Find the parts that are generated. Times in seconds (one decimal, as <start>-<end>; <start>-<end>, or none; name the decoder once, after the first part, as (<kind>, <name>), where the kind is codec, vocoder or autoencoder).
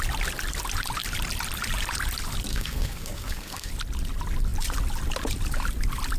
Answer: 2.5-3.7 (codec, SNAC)